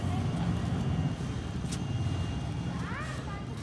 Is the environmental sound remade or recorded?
recorded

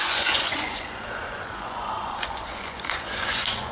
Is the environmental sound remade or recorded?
remade